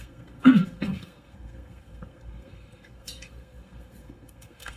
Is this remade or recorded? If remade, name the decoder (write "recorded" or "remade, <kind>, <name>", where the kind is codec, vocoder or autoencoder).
remade, codec, SNAC